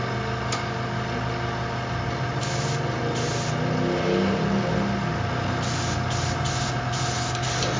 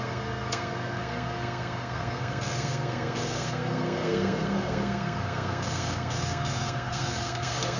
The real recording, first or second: first